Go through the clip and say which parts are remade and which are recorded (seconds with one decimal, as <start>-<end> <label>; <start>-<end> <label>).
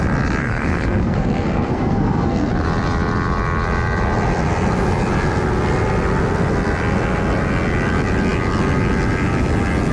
0.0-0.4 recorded; 0.4-2.5 remade; 2.5-9.9 recorded